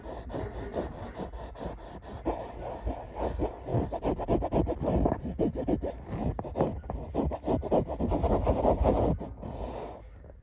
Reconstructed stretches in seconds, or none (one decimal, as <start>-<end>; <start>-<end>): none